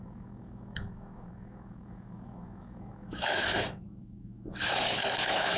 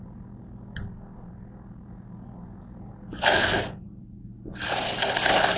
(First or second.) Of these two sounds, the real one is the second